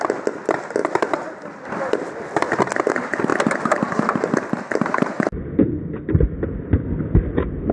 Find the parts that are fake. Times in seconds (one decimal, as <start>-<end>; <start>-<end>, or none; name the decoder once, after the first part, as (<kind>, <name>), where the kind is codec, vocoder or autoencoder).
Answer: 0.8-2.4 (vocoder, BigVGAN v2)